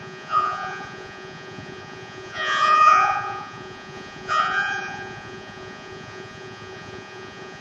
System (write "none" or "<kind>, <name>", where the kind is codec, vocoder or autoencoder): vocoder, Vocos